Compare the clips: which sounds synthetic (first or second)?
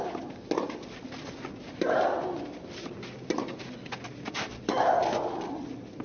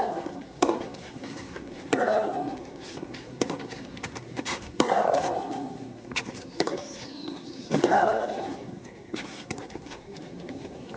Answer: second